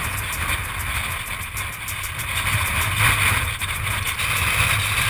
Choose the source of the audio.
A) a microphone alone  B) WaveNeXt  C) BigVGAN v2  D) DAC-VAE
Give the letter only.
A